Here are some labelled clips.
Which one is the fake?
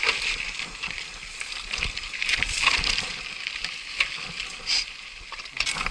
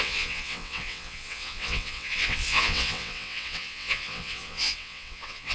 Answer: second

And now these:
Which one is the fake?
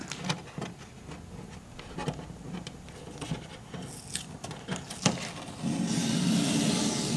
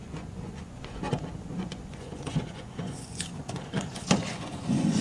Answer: second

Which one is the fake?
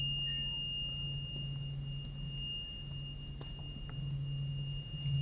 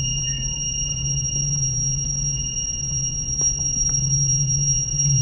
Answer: second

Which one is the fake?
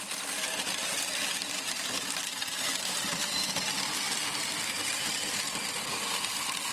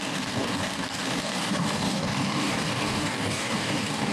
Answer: second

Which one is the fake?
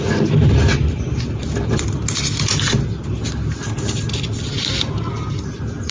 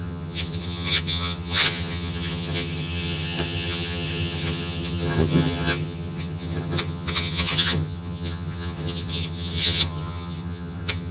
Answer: second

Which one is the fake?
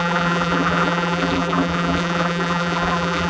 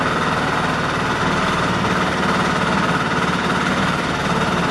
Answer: first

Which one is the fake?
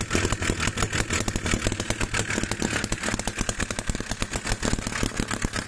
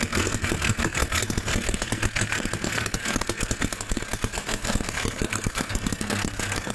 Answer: second